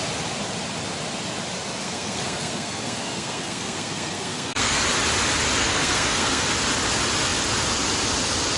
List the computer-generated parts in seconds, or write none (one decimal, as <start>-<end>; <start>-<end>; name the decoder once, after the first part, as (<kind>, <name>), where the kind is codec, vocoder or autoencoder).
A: 1.8-4.8 (codec, SNAC); 5.6-6.4